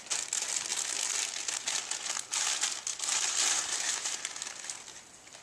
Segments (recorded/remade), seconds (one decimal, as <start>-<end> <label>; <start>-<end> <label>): 0.0-2.9 recorded; 2.9-4.3 remade; 4.3-5.4 recorded

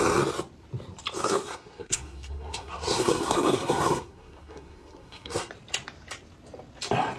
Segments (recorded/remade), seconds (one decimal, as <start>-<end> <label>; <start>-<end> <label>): 0.0-1.2 recorded; 1.2-5.5 remade; 5.5-7.2 recorded

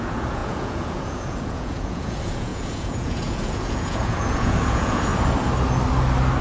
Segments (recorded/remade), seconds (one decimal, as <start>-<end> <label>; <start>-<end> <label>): 0.0-5.1 remade; 5.1-6.4 recorded

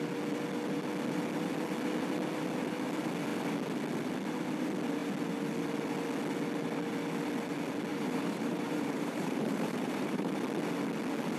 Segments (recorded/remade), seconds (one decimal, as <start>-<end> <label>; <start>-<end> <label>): 0.0-7.9 recorded; 7.9-10.3 remade; 10.3-11.4 recorded

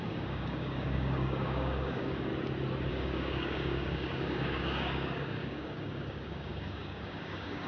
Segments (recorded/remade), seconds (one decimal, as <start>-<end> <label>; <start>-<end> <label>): 0.0-2.3 remade; 2.3-2.9 recorded; 2.9-7.7 remade

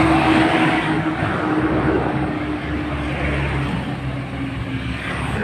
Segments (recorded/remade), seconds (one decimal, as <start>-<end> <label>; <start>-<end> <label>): 0.0-2.7 remade; 2.7-4.6 recorded; 4.6-5.4 remade

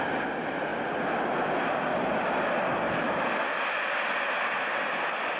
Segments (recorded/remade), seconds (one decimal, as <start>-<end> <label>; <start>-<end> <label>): 0.0-5.4 recorded